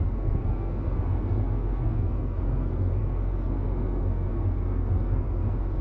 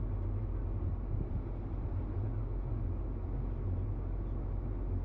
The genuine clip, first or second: second